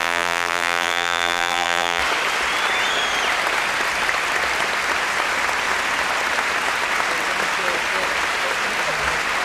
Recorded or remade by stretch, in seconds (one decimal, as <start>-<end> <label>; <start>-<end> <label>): 0.0-2.0 remade; 2.0-9.4 recorded